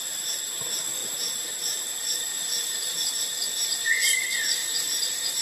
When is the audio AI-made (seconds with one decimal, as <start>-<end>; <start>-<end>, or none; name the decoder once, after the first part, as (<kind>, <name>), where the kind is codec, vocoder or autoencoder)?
1.0-1.6 (vocoder, BigVGAN v2); 2.3-3.0; 4.6-5.4